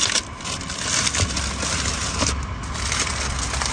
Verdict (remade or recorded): recorded